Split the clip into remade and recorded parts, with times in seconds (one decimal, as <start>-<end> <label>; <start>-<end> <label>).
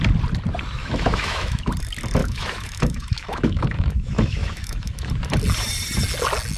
0.0-0.8 recorded; 0.8-1.7 remade; 1.7-2.2 recorded; 2.2-5.1 remade; 5.1-6.6 recorded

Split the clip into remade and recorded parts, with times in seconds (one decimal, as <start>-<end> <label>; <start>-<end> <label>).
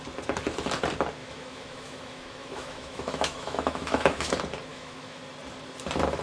0.0-1.2 recorded; 1.2-4.3 remade; 4.3-4.7 recorded; 4.7-5.2 remade; 5.2-6.2 recorded